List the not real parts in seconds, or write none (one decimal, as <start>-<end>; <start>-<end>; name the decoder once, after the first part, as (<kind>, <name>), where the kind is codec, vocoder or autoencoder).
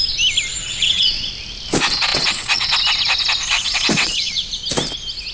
0.6-1.3 (vocoder, WaveNeXt); 2.1-2.8; 3.5-4.6